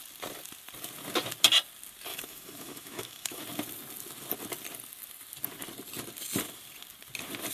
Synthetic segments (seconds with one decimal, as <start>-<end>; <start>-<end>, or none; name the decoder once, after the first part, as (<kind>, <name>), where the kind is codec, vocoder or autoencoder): 2.1-3.4 (autoencoder, DAC-VAE)